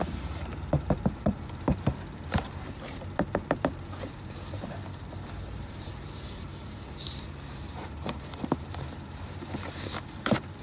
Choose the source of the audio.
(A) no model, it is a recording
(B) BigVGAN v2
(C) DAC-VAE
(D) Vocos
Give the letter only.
B